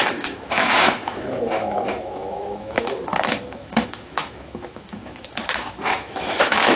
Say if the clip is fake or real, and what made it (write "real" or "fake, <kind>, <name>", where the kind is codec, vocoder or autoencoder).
fake, autoencoder, DAC-VAE